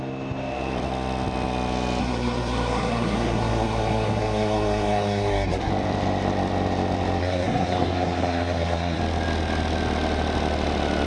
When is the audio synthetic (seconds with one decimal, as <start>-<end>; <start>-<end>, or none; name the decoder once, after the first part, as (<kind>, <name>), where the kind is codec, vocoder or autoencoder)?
2.0-5.7 (codec, SNAC); 7.2-9.0